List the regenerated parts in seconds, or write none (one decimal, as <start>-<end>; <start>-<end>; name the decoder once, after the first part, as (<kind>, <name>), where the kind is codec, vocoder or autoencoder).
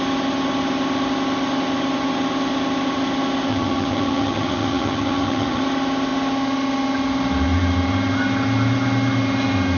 3.5-5.6 (vocoder, HiFi-GAN)